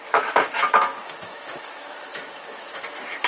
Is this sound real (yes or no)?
no